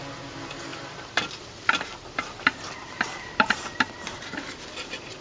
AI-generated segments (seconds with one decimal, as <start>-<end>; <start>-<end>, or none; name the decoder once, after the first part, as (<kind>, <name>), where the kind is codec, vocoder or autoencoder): 0.0-5.2 (vocoder, BigVGAN v2)